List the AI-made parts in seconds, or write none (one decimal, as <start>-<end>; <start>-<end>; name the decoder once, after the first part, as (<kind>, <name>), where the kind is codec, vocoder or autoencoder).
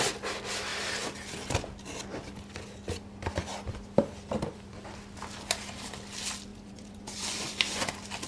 6.5-7.9 (vocoder, Vocos)